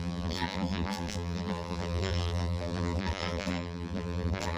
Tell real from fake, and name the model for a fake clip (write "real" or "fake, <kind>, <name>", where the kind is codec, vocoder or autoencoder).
fake, vocoder, BigVGAN v2